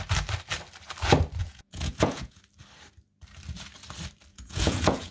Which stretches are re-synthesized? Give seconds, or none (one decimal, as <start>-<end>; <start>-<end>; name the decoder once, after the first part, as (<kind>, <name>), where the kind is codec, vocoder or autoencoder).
1.4-2.4 (vocoder, Vocos); 4.3-5.1